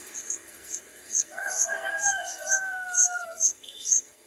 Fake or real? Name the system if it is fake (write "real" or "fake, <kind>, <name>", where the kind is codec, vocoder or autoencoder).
fake, codec, SNAC